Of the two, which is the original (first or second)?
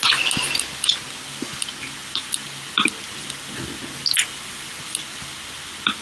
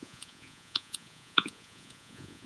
first